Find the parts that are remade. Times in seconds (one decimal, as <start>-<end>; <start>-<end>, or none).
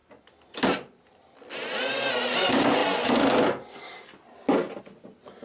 none